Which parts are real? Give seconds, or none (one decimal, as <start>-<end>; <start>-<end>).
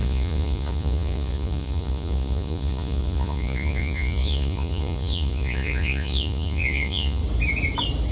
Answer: 7.2-8.1